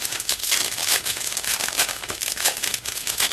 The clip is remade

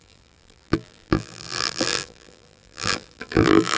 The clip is remade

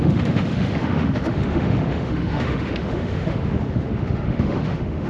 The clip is remade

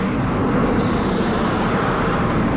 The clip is remade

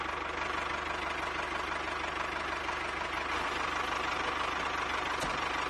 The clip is recorded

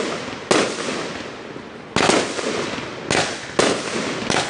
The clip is recorded